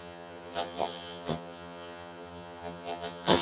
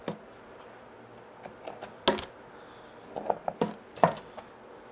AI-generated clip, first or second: first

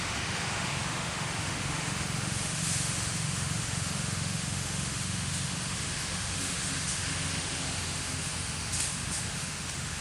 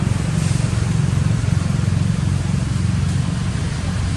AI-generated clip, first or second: first